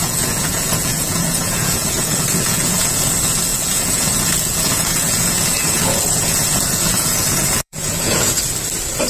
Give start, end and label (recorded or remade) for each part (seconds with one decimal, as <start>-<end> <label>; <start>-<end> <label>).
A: 0.0-3.1 remade; 3.1-3.5 recorded; 3.5-8.4 remade; 8.4-9.1 recorded